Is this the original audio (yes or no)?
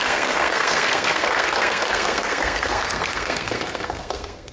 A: no